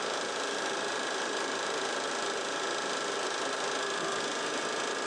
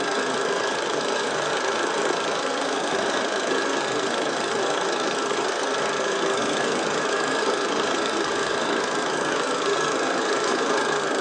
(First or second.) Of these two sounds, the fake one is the second